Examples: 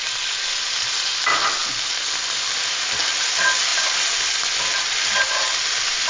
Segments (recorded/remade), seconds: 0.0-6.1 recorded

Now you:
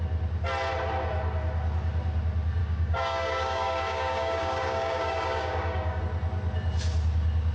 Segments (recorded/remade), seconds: 0.0-2.6 recorded; 2.6-6.0 remade; 6.0-7.5 recorded

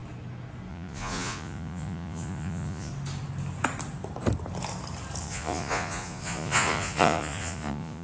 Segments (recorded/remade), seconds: 0.0-0.7 recorded; 0.7-2.9 remade; 2.9-5.2 recorded; 5.2-8.0 remade

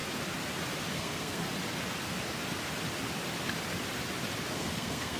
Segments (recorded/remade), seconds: 0.0-0.9 recorded; 0.9-1.4 remade; 1.4-4.5 recorded; 4.5-5.2 remade